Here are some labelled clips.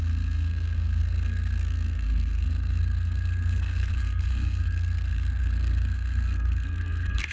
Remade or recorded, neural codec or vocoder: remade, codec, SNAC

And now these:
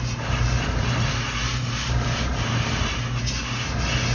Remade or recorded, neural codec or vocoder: remade, vocoder, BigVGAN v2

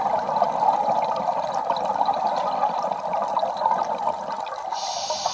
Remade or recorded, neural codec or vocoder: recorded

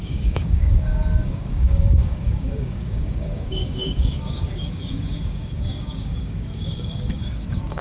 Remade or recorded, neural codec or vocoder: remade, codec, DAC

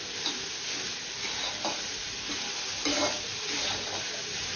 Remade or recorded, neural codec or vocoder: recorded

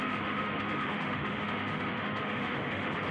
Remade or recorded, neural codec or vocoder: remade, autoencoder, DAC-VAE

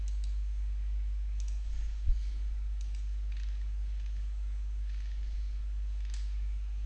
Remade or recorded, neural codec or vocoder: remade, codec, DAC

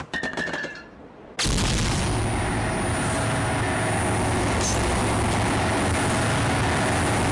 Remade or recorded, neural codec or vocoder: recorded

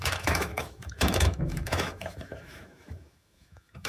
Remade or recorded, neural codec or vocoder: remade, autoencoder, DAC-VAE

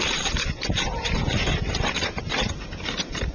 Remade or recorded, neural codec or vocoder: remade, vocoder, BigVGAN v2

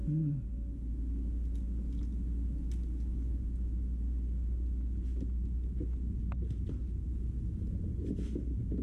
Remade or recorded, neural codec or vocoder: recorded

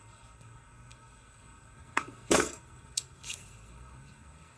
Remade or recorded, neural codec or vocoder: remade, codec, SNAC